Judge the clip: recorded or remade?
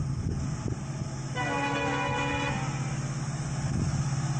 recorded